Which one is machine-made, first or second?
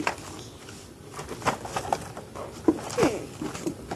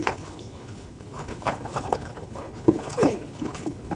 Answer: second